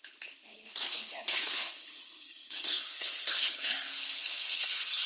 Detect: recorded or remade remade